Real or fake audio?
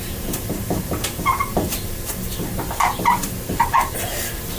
fake